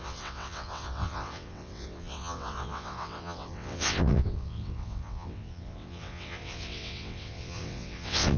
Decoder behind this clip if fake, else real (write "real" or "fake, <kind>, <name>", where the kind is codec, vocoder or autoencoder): fake, vocoder, WaveNeXt